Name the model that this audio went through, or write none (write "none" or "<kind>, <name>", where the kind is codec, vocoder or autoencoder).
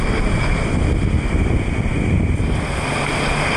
none